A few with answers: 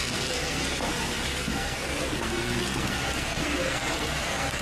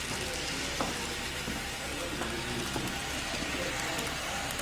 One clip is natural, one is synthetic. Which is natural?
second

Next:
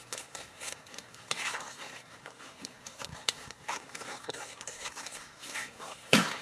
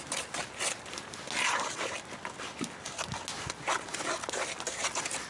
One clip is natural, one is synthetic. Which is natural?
second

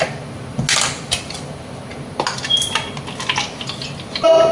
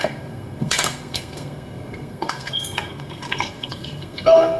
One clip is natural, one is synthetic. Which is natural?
first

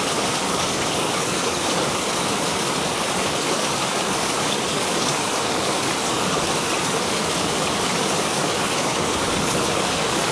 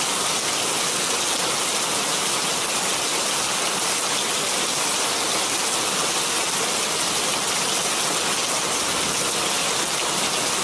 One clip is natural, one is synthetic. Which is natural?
second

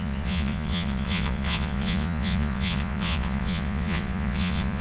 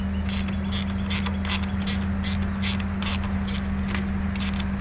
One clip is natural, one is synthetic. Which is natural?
second